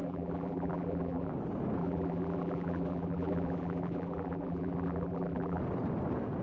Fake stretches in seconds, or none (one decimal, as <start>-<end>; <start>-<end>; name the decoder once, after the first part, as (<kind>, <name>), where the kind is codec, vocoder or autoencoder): 0.0-1.3 (vocoder, BigVGAN v2); 1.8-5.6